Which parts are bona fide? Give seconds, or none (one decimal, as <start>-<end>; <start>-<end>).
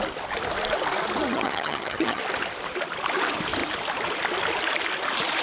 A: 0.0-1.3; 2.2-5.4